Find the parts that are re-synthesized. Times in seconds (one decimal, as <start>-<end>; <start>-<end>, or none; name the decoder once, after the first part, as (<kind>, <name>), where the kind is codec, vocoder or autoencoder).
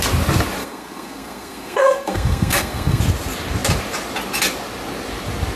0.6-3.0 (codec, SNAC)